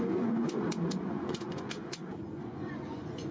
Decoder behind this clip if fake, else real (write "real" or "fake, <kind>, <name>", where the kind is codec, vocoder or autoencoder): fake, vocoder, Vocos